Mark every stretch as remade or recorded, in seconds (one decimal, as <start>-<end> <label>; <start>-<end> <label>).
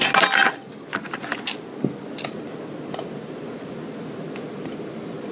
0.0-5.3 recorded